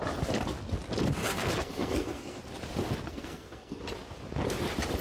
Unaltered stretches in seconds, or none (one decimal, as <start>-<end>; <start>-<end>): 0.0-1.2; 2.4-3.1; 3.8-5.0

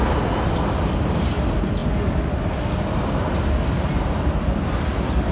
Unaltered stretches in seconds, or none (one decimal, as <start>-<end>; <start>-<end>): 0.0-5.3

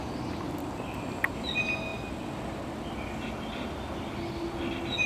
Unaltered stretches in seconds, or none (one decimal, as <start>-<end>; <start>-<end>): 0.0-5.1

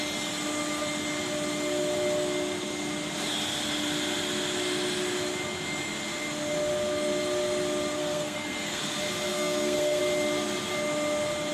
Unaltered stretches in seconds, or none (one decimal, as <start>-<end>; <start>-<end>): 0.0-8.0; 8.8-9.3; 10.0-11.5

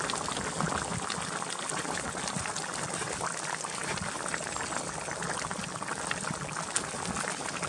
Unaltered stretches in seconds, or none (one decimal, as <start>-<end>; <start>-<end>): 0.0-7.7

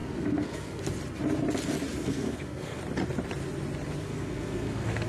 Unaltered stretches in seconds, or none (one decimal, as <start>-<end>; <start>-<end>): 0.8-2.0; 2.8-4.0

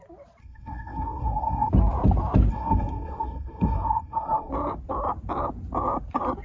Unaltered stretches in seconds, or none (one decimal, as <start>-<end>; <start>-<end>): 0.0-0.4; 1.7-2.5; 4.5-6.4

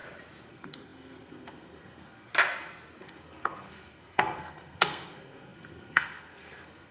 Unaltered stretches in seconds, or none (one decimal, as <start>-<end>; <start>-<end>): 0.0-0.5; 2.3-3.0